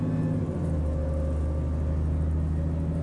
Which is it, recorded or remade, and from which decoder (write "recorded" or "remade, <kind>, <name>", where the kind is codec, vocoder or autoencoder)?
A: recorded